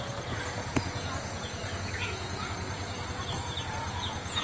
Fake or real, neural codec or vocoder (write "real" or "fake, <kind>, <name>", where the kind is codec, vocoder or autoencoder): fake, vocoder, Vocos